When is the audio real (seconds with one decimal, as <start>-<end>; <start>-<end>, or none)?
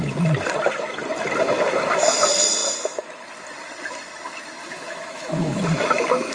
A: 0.0-4.6; 5.6-6.3